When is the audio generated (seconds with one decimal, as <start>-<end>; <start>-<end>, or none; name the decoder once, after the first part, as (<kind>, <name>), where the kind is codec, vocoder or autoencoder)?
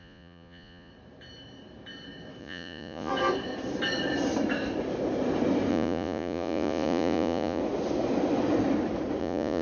0.0-0.9 (vocoder, Vocos); 2.4-3.1; 5.7-7.6; 9.2-9.6